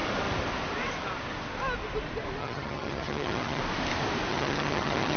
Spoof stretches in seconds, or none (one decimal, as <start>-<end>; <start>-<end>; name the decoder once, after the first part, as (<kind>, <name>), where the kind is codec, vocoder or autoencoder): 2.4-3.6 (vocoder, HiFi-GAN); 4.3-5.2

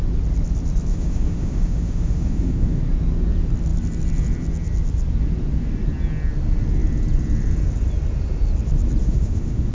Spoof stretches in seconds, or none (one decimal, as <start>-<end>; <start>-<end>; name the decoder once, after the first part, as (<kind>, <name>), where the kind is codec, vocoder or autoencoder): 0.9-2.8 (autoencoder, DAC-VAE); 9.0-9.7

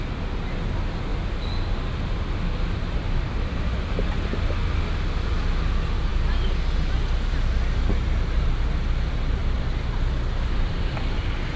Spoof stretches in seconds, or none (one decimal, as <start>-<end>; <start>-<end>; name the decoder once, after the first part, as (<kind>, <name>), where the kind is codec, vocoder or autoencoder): 9.4-11.2 (vocoder, BigVGAN v2)